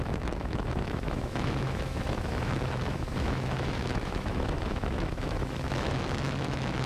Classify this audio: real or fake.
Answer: fake